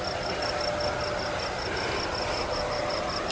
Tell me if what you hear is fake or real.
real